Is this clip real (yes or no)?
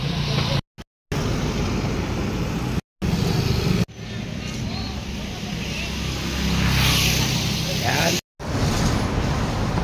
yes